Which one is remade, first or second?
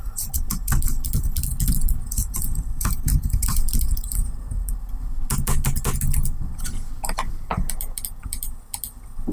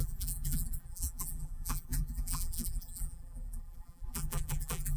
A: second